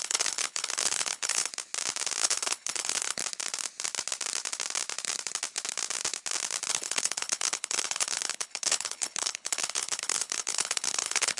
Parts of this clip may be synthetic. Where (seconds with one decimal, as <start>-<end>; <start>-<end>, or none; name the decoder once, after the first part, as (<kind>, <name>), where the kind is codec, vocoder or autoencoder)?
0.0-1.5 (codec, HILCodec); 2.2-3.2; 6.7-11.4